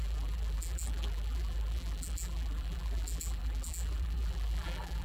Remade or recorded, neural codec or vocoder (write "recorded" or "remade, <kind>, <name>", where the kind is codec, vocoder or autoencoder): remade, vocoder, BigVGAN v2